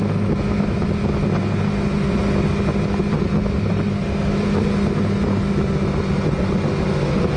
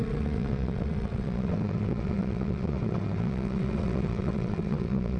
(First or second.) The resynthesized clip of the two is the second